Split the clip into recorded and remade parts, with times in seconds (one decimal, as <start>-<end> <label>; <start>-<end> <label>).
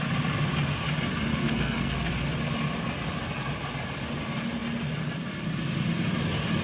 0.0-1.3 recorded; 1.3-2.1 remade; 2.1-6.6 recorded